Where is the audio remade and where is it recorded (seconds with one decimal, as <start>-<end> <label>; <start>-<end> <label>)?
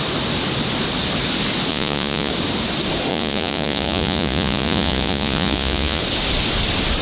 0.0-1.7 recorded; 1.7-2.3 remade; 2.3-3.1 recorded; 3.1-6.0 remade; 6.0-7.0 recorded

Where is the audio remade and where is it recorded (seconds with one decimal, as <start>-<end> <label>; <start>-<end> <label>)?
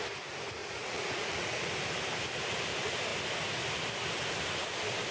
0.0-0.6 recorded; 0.6-1.7 remade; 1.7-5.1 recorded